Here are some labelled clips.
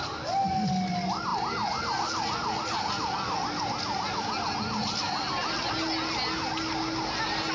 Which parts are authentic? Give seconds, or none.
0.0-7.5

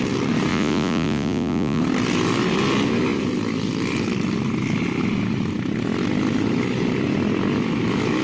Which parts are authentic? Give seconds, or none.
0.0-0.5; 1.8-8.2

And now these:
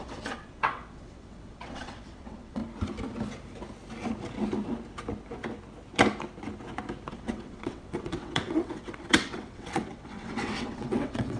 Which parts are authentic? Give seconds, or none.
2.6-7.1